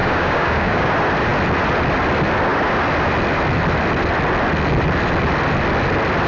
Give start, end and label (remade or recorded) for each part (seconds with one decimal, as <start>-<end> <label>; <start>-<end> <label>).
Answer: 0.0-0.9 remade; 0.9-6.3 recorded